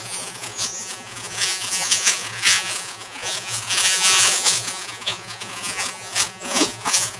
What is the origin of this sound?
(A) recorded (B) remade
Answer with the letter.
B